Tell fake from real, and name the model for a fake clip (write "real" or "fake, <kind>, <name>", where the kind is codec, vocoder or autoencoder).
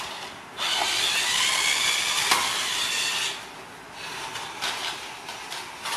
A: real